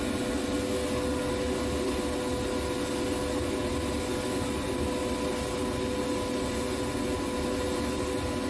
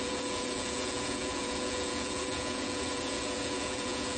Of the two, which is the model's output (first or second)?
second